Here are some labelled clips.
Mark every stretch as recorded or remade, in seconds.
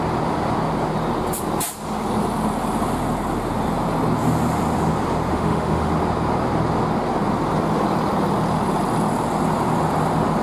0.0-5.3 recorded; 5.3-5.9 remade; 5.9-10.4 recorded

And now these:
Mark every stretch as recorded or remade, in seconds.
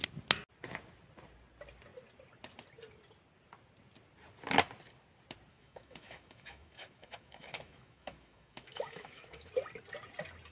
0.0-5.5 recorded; 5.5-9.5 remade; 9.5-10.5 recorded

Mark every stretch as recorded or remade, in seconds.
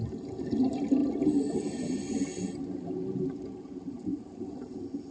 0.0-5.1 recorded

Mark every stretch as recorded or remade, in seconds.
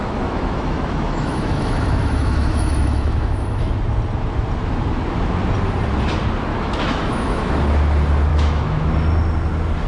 0.0-3.7 remade; 3.7-6.5 recorded; 6.5-7.5 remade; 7.5-8.3 recorded; 8.3-8.9 remade; 8.9-9.9 recorded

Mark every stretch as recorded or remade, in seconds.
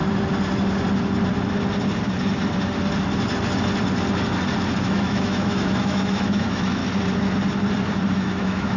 0.0-4.8 recorded; 4.8-6.8 remade; 6.8-8.1 recorded; 8.1-8.8 remade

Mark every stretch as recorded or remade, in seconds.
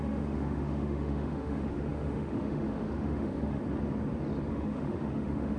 0.0-3.6 remade; 3.6-4.5 recorded; 4.5-5.6 remade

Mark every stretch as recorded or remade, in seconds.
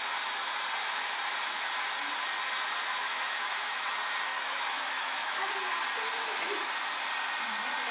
0.0-3.0 recorded; 3.0-3.9 remade; 3.9-4.3 recorded; 4.3-5.5 remade; 5.5-7.9 recorded